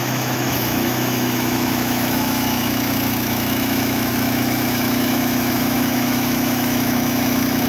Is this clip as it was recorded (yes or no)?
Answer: no